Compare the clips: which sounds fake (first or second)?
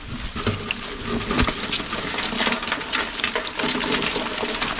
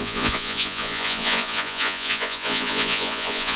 second